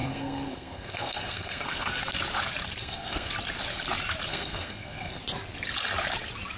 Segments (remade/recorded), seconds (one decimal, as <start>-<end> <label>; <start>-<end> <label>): 0.0-1.9 remade; 1.9-2.8 recorded; 2.8-3.3 remade; 3.3-4.3 recorded; 4.3-5.2 remade; 5.2-6.6 recorded